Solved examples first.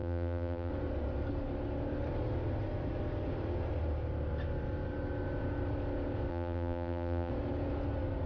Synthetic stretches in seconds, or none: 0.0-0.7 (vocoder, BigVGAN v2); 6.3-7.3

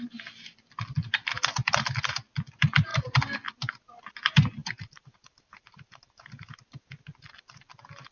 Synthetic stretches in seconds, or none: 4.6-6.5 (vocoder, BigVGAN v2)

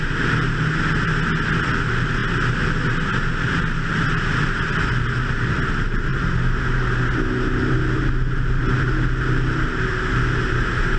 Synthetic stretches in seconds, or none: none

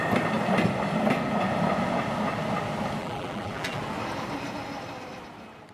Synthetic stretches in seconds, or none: 3.0-3.8 (vocoder, BigVGAN v2)

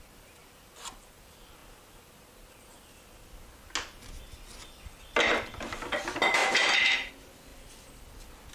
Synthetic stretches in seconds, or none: 0.4-1.1 (vocoder, BigVGAN v2); 6.4-7.1

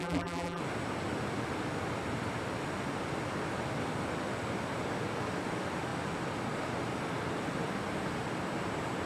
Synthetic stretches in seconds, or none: 0.0-0.6 (vocoder, BigVGAN v2)

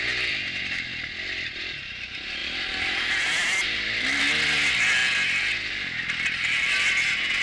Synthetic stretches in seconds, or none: 2.4-4.2 (vocoder, BigVGAN v2)

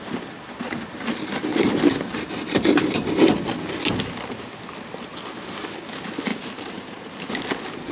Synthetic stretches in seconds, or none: 1.5-2.3 (vocoder, BigVGAN v2); 6.3-7.3